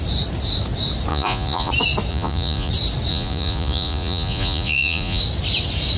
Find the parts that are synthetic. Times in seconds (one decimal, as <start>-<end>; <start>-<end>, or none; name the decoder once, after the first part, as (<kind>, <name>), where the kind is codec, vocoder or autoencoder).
1.1-1.7 (vocoder, Vocos); 2.1-2.7; 3.1-5.2